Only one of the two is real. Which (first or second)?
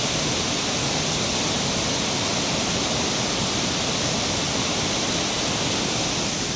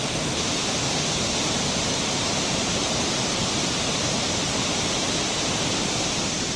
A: first